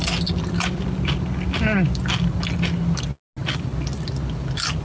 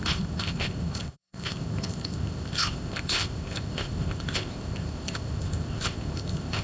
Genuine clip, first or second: first